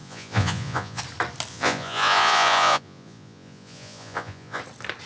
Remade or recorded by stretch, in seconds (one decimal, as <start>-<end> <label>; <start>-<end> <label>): 0.0-1.0 remade; 1.0-1.5 recorded; 1.5-4.6 remade; 4.6-5.1 recorded